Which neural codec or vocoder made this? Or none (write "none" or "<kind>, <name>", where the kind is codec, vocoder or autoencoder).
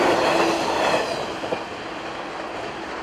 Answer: none